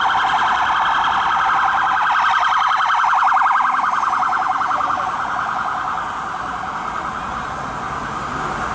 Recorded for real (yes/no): yes